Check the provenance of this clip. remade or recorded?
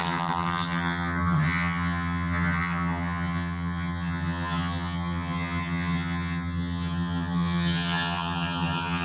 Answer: remade